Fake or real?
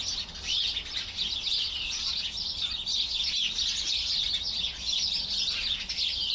real